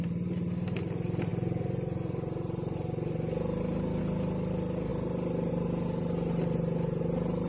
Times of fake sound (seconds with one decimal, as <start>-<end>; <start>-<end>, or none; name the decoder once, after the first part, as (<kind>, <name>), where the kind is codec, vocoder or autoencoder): none